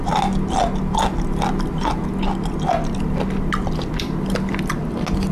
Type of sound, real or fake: real